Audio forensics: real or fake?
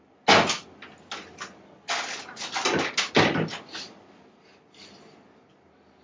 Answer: real